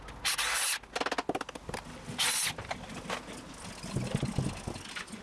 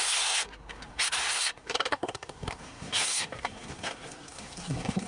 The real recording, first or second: first